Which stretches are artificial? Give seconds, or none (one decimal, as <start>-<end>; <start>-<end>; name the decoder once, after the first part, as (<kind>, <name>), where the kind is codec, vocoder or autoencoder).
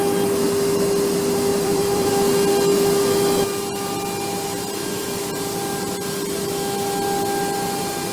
1.5-2.1 (vocoder, BigVGAN v2)